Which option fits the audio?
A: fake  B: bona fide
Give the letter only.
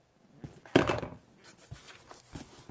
B